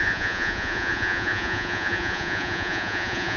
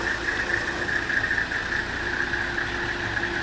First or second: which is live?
second